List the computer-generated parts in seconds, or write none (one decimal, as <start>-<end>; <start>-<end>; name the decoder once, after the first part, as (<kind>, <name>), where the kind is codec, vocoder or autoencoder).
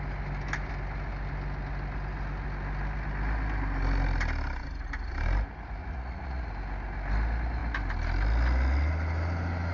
5.8-6.5 (vocoder, Vocos)